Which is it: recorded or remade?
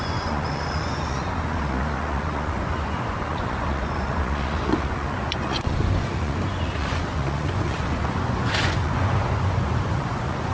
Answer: remade